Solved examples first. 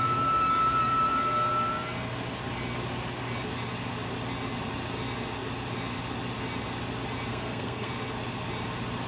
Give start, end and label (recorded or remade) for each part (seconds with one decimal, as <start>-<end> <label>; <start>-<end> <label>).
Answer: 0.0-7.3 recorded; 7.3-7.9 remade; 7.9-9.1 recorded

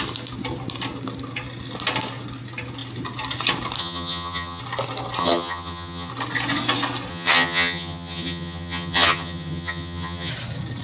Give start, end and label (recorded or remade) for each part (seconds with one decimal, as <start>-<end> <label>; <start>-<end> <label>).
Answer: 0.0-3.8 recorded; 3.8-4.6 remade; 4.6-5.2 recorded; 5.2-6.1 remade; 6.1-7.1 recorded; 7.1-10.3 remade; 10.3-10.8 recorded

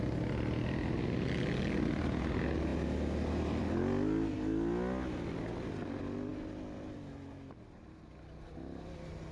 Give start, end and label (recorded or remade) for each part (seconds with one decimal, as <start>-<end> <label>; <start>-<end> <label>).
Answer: 0.0-9.3 recorded

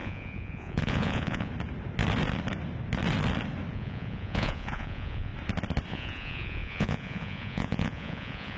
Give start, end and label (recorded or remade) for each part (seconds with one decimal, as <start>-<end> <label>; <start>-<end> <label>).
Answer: 0.0-1.5 remade; 1.5-3.7 recorded; 3.7-5.3 remade; 5.3-5.9 recorded; 5.9-8.6 remade